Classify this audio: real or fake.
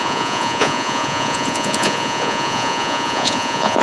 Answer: fake